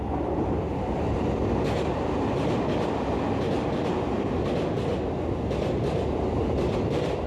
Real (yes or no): yes